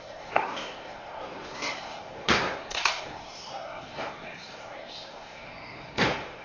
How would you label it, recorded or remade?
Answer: remade